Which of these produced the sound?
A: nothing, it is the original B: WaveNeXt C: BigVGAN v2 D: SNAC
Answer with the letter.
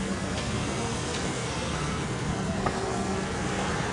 D